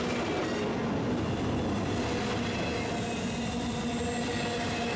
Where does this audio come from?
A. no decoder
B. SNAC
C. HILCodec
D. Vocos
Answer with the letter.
A